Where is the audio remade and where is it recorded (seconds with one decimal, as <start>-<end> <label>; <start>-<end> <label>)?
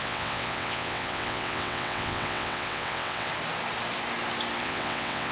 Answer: 0.0-3.3 remade; 3.3-4.6 recorded; 4.6-5.3 remade